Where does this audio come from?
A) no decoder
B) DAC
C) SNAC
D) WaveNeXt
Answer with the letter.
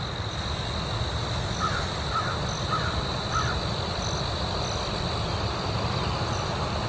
A